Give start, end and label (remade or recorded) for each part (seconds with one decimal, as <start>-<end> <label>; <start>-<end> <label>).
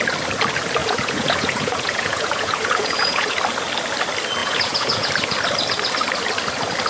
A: 0.0-0.8 recorded; 0.8-3.4 remade; 3.4-4.4 recorded; 4.4-5.1 remade; 5.1-6.9 recorded